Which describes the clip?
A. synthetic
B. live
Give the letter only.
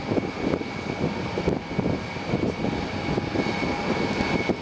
B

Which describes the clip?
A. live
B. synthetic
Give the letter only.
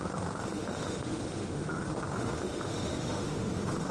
B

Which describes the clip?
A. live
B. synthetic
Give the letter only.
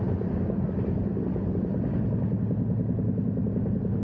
A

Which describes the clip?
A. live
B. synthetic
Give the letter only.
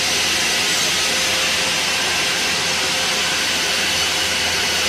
A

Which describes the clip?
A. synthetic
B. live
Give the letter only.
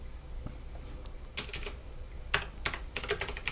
B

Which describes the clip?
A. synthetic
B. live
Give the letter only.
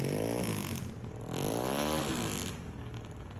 B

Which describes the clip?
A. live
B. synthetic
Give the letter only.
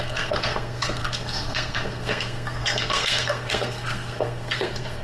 B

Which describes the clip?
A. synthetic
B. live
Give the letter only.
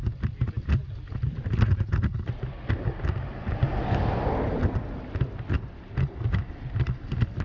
B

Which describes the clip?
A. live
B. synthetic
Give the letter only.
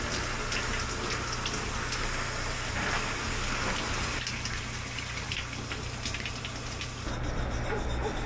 A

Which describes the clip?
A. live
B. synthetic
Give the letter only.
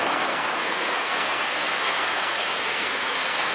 B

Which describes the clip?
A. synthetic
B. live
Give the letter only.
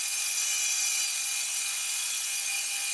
A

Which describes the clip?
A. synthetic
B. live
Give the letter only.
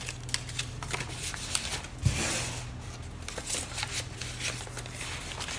B